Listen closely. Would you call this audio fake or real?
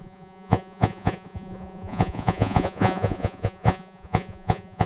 fake